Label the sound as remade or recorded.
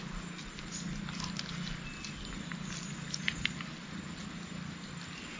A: recorded